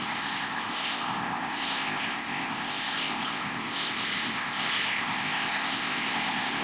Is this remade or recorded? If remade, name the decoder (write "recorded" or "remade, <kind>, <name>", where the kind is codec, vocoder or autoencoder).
remade, codec, ZipCodec